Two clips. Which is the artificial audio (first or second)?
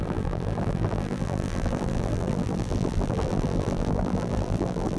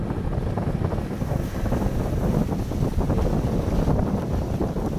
first